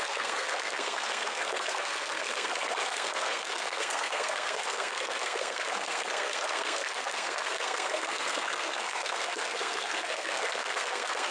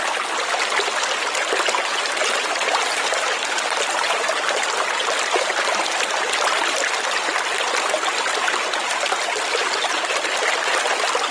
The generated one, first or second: first